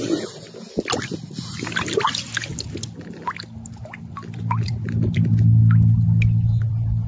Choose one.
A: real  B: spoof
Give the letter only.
A